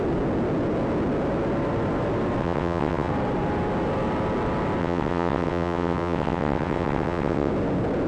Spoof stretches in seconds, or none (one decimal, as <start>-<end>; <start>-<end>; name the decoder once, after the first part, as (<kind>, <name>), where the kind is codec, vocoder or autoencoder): 2.4-3.1 (vocoder, WaveNeXt); 4.8-7.5